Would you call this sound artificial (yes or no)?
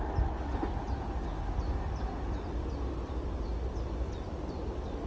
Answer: no